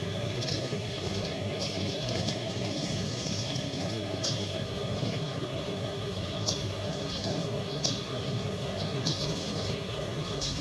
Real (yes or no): no